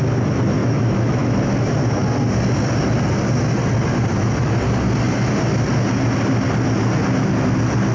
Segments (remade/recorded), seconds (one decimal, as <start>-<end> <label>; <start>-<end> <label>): 0.0-0.6 recorded; 0.6-1.5 remade; 1.5-7.9 recorded